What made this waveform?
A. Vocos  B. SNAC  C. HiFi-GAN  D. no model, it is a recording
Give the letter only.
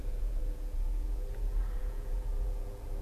A